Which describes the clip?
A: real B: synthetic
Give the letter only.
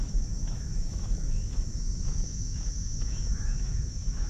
B